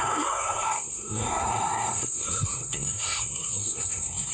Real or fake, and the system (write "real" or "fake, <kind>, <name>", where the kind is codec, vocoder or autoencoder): fake, codec, SNAC